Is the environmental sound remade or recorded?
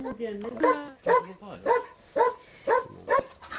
recorded